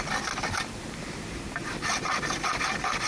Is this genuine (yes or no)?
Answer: yes